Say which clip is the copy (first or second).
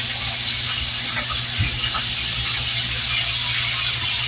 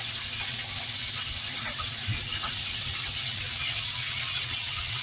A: second